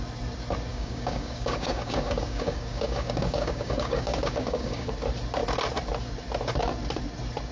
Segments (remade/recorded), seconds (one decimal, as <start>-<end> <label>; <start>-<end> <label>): 0.0-0.7 recorded; 0.7-4.9 remade; 4.9-7.5 recorded